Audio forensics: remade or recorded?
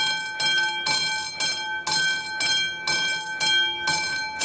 recorded